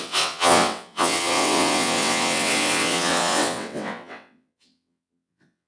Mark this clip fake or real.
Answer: fake